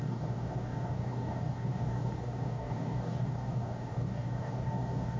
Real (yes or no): no